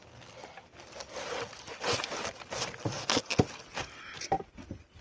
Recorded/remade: recorded